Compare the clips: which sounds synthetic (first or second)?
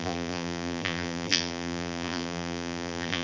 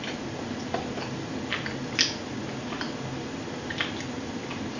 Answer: first